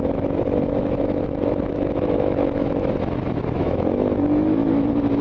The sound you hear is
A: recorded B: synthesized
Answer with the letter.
B